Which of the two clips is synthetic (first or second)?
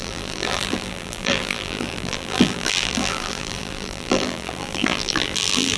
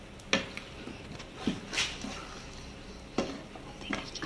first